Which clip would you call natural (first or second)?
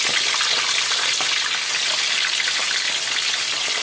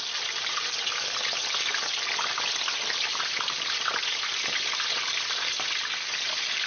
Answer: first